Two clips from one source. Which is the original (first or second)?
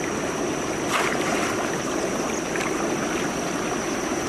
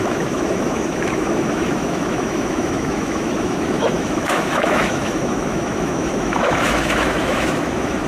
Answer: first